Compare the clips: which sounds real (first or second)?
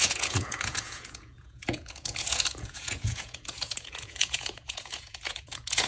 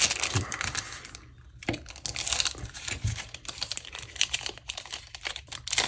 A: second